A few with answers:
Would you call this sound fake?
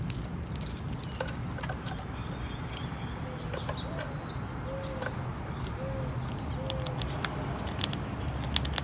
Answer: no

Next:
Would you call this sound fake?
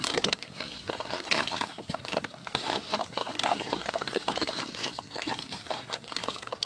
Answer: yes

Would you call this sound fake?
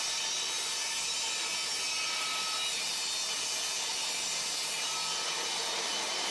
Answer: no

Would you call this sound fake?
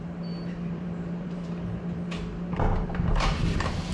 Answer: yes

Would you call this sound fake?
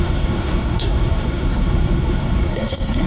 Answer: yes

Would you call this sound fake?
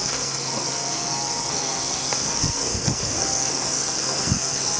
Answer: yes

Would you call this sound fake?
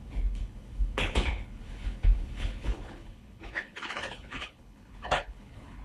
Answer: yes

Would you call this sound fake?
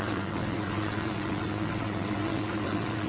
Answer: yes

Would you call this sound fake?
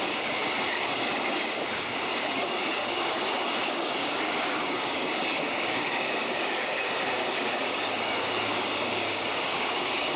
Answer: yes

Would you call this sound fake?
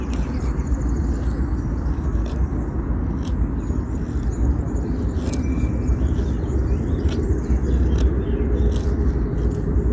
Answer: no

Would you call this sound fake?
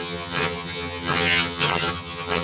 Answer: yes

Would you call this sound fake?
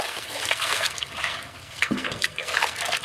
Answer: yes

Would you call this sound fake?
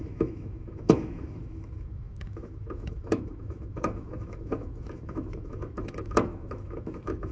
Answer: yes